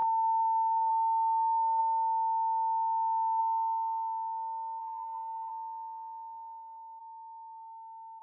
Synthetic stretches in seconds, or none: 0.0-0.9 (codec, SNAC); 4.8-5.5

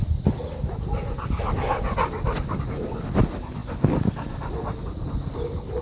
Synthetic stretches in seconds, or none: none

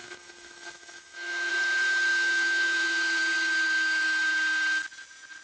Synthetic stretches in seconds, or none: 0.0-1.5 (autoencoder, DAC-VAE); 2.1-3.2

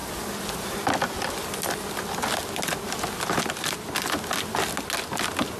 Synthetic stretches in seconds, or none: none

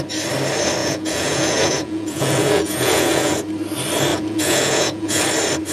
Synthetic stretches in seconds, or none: 0.8-3.3 (vocoder, Vocos); 4.1-5.2

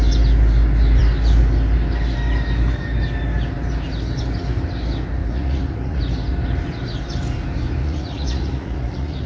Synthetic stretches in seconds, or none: 5.2-6.0 (vocoder, Vocos); 7.8-9.3

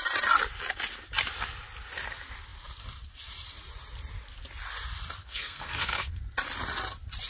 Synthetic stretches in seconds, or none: 5.2-6.2 (codec, SNAC)